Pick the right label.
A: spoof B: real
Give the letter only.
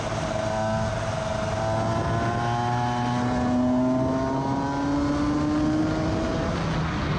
B